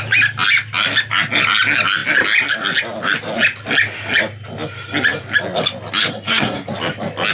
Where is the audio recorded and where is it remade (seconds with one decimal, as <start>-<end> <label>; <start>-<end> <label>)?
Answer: 0.0-6.1 recorded; 6.1-6.7 remade; 6.7-7.3 recorded